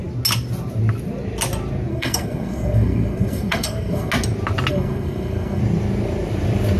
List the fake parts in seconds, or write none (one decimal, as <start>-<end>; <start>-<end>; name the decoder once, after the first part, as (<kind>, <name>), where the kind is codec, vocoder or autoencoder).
1.9-4.1 (codec, SNAC); 4.7-5.6